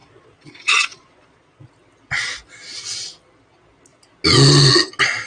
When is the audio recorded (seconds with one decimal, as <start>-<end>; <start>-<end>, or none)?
1.7-5.3